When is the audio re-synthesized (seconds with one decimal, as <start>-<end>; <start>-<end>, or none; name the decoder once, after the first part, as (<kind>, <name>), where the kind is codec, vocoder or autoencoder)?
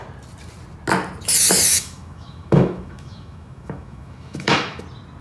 1.7-4.8 (autoencoder, DAC-VAE)